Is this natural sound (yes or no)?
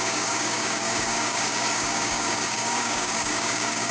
no